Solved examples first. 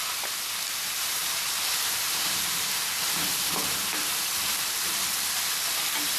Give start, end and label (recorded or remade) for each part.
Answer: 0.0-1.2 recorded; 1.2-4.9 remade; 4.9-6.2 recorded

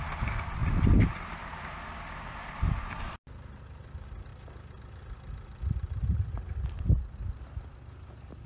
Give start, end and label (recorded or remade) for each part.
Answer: 0.0-0.6 recorded; 0.6-1.5 remade; 1.5-4.3 recorded; 4.3-4.8 remade; 4.8-8.5 recorded